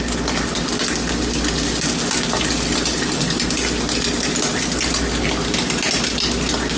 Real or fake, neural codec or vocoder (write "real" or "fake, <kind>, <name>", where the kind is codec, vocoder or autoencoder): real